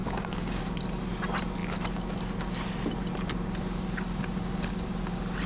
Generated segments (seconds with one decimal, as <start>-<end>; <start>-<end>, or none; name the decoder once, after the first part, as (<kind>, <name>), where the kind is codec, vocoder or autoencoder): 0.0-0.6 (codec, DAC)